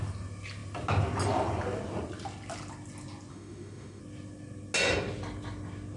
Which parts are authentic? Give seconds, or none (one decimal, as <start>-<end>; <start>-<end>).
0.0-3.3; 4.0-6.0